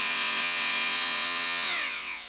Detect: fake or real fake